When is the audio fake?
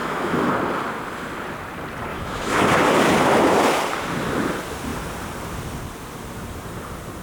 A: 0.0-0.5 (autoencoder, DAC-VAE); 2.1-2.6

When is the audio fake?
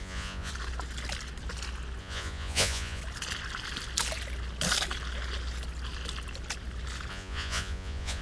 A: 0.0-0.5 (vocoder, Vocos); 2.0-3.0; 7.1-8.2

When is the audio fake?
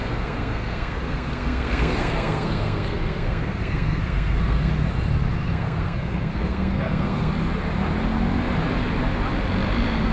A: 0.0-4.7 (codec, SNAC); 5.4-7.3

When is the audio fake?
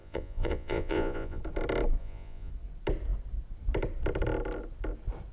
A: 0.0-1.4 (vocoder, Vocos); 2.0-2.5